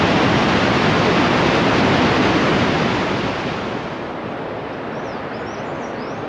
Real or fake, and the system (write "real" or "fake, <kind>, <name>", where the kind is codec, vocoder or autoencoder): real